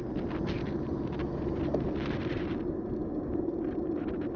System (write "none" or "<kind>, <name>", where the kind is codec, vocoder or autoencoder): none